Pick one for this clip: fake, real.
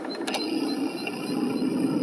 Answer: real